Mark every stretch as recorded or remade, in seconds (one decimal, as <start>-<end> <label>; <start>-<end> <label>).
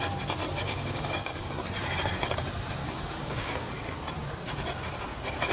0.0-0.6 recorded; 0.6-1.3 remade; 1.3-2.8 recorded; 2.8-3.7 remade; 3.7-5.5 recorded